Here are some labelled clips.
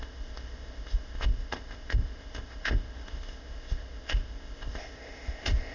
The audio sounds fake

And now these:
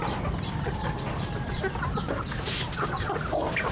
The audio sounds real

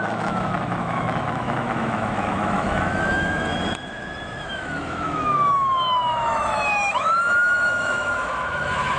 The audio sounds fake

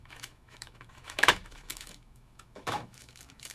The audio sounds fake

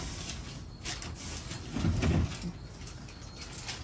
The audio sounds real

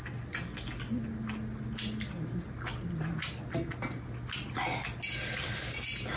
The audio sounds real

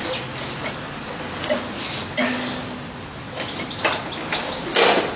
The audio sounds real